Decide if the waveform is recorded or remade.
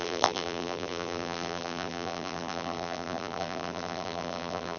remade